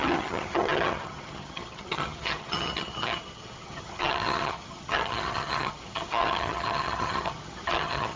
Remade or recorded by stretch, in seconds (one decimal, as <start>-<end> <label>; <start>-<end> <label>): 0.0-8.2 remade